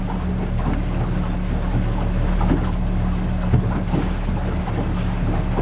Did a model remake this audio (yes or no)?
no